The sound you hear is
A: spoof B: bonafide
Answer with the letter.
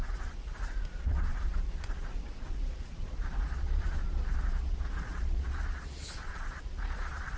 A